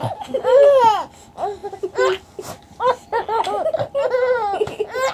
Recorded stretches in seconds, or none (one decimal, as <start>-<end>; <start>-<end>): 0.0-5.1